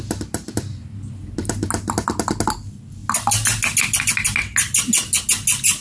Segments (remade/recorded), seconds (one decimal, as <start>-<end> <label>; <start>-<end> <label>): 0.0-5.8 recorded